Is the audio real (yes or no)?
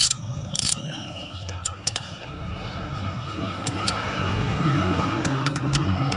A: no